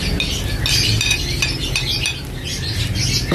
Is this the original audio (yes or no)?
yes